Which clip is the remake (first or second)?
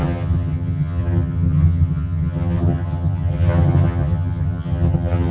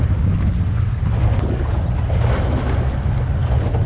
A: first